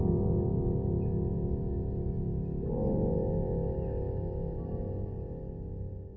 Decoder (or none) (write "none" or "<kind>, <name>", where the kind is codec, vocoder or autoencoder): none